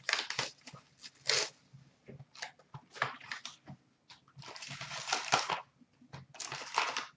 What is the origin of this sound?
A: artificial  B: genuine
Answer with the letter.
B